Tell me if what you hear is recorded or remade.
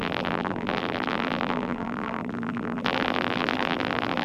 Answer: remade